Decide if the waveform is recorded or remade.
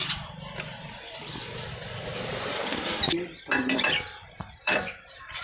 remade